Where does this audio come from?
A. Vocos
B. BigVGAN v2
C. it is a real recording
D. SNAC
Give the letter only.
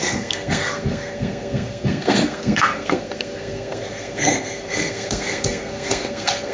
D